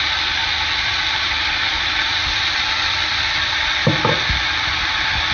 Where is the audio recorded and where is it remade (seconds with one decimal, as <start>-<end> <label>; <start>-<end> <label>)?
0.0-0.4 recorded; 0.4-3.6 remade; 3.6-5.3 recorded